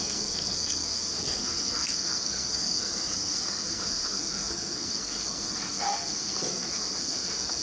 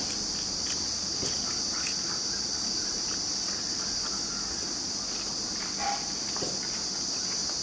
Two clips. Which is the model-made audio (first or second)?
first